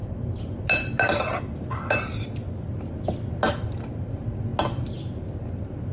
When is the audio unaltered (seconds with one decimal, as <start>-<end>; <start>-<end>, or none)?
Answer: 0.0-5.9